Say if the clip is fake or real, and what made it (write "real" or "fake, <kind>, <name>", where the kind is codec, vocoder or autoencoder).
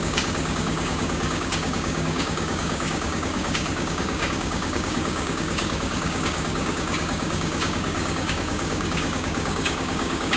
fake, codec, DAC